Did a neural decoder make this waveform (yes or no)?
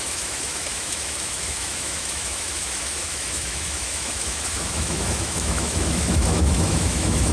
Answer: yes